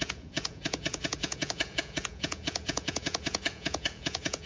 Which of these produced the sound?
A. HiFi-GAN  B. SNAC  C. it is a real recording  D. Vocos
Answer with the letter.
D